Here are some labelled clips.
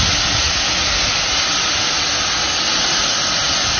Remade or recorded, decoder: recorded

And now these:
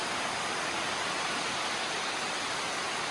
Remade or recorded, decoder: recorded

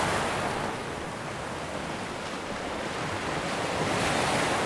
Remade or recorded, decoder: recorded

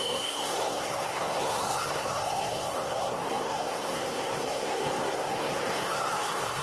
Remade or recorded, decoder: remade, codec, SNAC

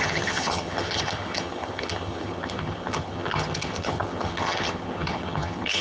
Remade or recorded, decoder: remade, vocoder, HiFi-GAN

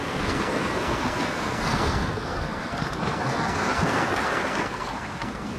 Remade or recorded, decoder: remade, codec, SNAC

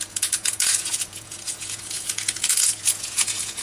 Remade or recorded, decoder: remade, vocoder, Vocos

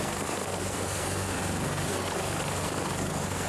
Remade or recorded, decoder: remade, codec, SNAC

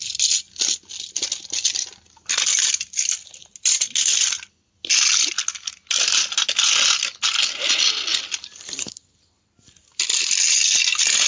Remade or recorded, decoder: recorded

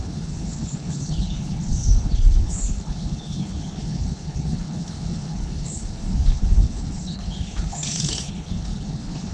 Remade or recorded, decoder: remade, codec, HILCodec